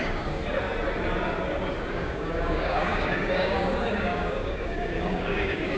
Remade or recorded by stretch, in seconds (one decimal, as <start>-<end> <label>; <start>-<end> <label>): 0.0-0.4 remade; 0.4-1.9 recorded; 1.9-5.8 remade